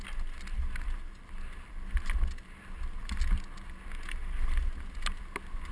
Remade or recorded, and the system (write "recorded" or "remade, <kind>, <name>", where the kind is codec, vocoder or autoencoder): recorded